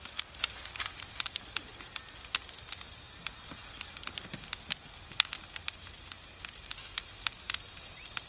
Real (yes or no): yes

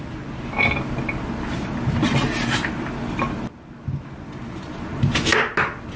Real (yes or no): yes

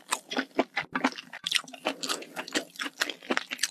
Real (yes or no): yes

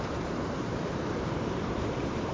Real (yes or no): no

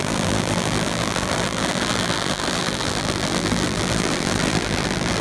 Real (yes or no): no